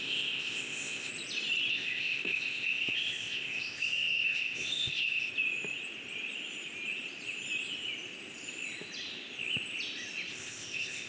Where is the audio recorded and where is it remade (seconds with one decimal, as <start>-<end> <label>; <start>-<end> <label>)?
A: 0.0-1.1 remade; 1.1-1.7 recorded; 1.7-5.3 remade; 5.3-10.3 recorded; 10.3-11.1 remade